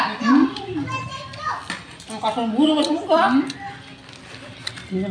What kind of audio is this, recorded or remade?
recorded